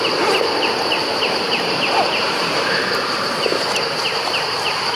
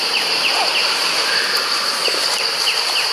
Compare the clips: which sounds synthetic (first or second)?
first